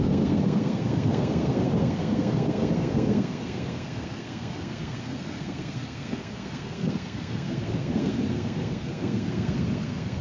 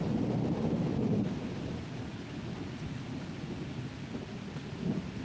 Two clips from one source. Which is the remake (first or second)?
first